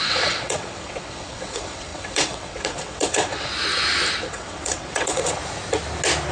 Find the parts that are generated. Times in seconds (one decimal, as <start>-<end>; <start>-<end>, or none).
0.0-3.5; 4.2-5.4